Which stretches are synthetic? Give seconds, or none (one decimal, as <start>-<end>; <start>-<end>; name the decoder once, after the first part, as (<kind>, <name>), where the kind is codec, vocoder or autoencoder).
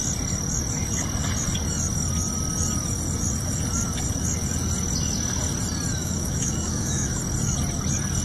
6.0-7.2 (autoencoder, DAC-VAE)